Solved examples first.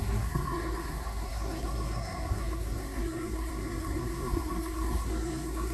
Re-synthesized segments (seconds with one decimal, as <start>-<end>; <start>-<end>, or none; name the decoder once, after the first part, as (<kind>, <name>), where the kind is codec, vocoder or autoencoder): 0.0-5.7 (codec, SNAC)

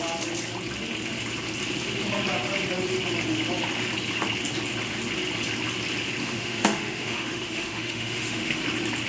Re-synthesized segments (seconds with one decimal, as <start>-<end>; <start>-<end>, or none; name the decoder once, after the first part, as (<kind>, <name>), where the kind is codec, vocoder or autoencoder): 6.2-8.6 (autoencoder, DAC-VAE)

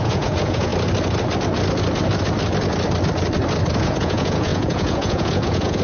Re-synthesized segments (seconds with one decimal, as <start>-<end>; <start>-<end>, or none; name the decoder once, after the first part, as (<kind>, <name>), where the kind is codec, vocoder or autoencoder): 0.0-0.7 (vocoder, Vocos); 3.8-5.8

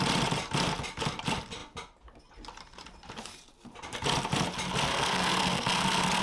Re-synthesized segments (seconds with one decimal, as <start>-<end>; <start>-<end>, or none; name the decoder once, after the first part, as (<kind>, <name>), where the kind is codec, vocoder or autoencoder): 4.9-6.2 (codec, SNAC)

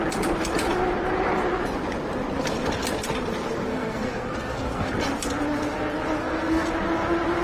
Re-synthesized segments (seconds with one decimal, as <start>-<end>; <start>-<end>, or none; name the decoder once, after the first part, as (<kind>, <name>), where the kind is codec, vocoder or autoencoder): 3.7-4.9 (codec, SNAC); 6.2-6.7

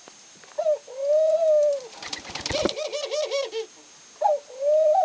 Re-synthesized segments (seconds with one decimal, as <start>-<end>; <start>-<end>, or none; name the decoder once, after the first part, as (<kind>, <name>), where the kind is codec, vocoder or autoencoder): none

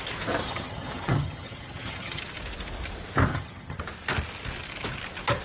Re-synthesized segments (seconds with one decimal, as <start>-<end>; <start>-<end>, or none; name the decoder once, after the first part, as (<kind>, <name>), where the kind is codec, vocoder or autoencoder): 0.4-2.2 (vocoder, HiFi-GAN); 3.3-3.8